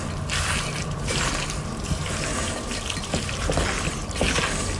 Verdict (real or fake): fake